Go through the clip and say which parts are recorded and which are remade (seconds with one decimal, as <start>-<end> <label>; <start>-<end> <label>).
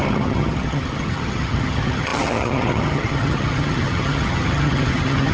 0.0-5.3 remade